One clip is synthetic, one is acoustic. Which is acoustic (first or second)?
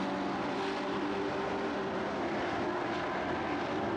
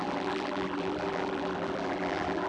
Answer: first